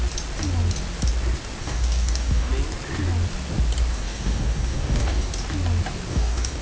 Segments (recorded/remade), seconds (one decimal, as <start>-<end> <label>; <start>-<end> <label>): 0.0-1.6 recorded; 1.6-2.5 remade; 2.5-3.9 recorded; 3.9-5.3 remade; 5.3-6.1 recorded; 6.1-6.6 remade